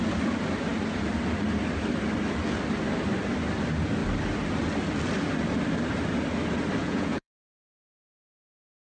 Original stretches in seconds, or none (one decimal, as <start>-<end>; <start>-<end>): 0.0-6.8; 7.7-9.0